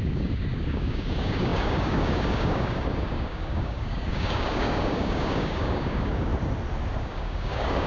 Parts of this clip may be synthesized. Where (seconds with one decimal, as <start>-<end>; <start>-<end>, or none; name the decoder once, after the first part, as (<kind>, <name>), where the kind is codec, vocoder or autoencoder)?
0.0-6.3 (codec, DAC); 7.0-7.9